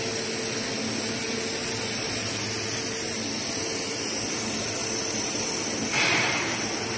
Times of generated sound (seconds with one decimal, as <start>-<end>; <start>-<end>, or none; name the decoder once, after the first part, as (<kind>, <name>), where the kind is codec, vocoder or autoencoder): none